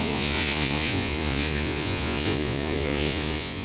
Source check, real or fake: fake